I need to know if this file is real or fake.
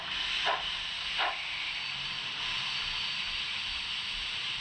real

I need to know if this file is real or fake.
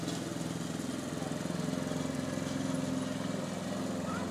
real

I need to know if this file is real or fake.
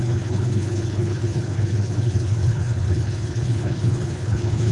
fake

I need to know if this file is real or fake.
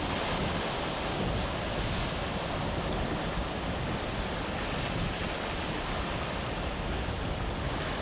real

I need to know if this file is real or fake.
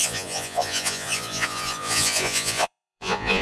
fake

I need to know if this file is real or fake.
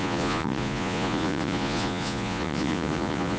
fake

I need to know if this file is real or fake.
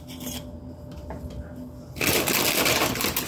real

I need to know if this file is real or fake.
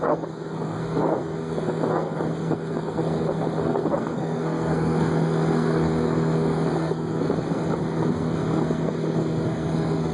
fake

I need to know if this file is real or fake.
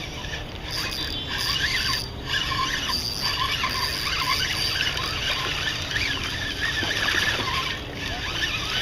real